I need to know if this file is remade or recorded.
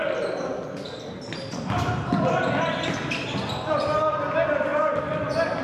recorded